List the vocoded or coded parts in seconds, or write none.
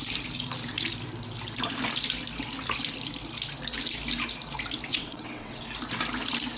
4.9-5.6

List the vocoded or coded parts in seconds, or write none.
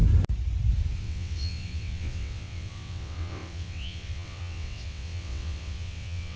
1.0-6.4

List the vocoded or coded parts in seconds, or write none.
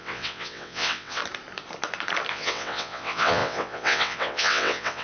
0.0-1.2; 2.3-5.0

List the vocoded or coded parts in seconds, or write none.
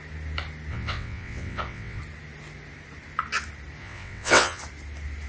0.7-2.0; 3.8-4.6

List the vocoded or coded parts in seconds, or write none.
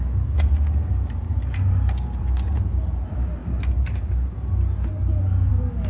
none